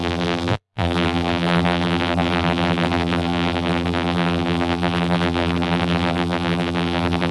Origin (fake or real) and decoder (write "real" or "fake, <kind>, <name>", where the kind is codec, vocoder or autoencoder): fake, vocoder, BigVGAN v2